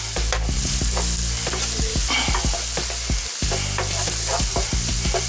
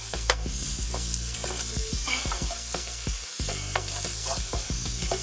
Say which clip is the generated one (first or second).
second